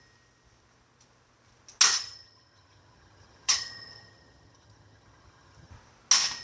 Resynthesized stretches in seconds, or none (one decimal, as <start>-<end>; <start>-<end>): 1.9-5.7